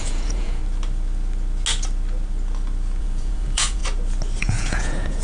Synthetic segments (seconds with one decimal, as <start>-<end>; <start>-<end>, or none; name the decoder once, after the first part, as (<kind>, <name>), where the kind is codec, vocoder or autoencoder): 0.0-0.6 (vocoder, Vocos); 3.0-3.8; 4.4-5.2

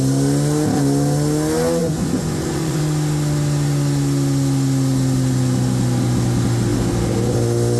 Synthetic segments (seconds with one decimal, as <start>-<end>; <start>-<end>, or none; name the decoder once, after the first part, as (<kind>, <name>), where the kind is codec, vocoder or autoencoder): 1.8-2.8 (vocoder, Vocos)